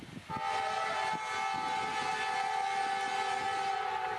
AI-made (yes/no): no